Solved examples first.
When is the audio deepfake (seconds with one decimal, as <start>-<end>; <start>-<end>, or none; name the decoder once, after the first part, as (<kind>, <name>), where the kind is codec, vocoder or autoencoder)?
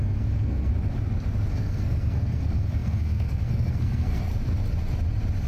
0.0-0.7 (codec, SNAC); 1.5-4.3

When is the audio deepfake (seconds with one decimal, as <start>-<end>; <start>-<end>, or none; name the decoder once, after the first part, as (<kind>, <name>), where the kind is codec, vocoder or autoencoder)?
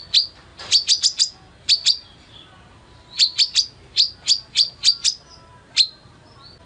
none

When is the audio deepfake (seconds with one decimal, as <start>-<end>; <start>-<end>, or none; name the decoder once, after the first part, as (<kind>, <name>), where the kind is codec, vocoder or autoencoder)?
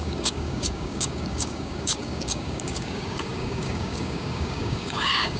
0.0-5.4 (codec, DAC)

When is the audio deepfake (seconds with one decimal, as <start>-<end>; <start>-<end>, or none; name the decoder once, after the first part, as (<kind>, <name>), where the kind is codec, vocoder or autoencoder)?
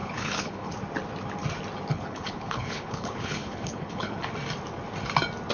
0.0-0.7 (codec, HILCodec); 1.9-4.2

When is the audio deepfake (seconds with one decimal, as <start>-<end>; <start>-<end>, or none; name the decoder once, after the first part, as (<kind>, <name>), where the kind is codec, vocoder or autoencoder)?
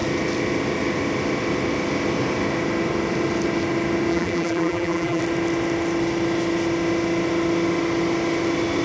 4.1-5.2 (vocoder, BigVGAN v2)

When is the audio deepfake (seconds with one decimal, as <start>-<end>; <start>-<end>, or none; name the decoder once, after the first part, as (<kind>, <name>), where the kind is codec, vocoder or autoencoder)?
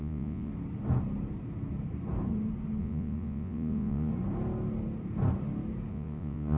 0.0-0.5 (vocoder, Vocos); 2.8-4.1; 5.9-6.6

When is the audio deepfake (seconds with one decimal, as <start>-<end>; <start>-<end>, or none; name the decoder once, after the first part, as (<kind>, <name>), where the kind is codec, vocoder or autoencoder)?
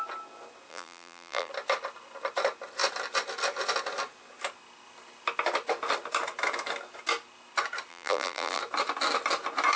0.7-1.5 (vocoder, BigVGAN v2); 7.9-8.6